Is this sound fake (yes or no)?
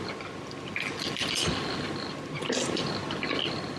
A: no